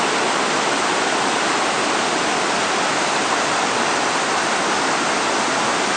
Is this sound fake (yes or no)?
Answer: no